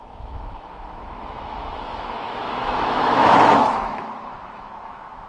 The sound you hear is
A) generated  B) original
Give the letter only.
A